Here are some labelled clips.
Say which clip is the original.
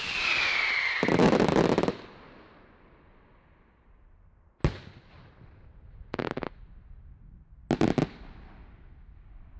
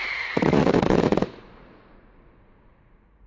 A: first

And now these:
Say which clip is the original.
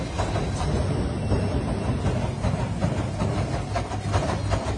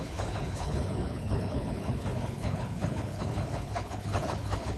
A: first